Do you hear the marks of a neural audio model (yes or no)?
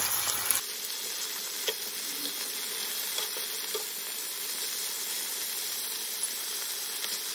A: no